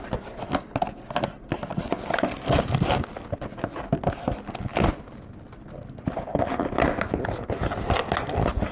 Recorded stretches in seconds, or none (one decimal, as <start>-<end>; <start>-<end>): 0.0-8.7